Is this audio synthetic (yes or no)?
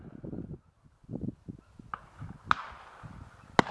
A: no